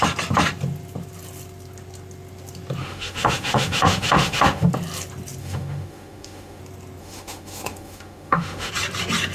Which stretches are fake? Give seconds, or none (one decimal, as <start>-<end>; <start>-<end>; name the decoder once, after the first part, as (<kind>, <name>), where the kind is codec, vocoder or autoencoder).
2.8-4.7 (autoencoder, DAC-VAE); 5.4-6.6; 7.0-8.7